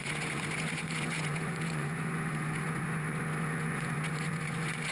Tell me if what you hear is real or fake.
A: fake